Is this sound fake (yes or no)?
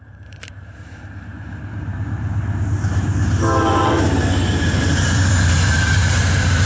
yes